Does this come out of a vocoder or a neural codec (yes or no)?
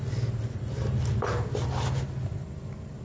no